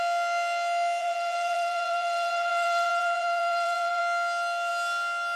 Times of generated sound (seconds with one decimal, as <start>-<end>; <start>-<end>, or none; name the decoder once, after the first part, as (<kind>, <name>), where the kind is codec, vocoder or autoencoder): 1.0-4.0 (vocoder, BigVGAN v2)